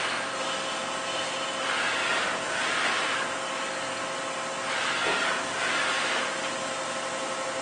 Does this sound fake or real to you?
real